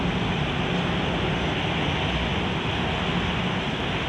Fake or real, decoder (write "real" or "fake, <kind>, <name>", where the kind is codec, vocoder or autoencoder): real